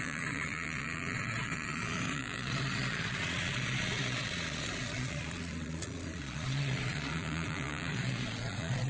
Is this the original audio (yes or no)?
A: no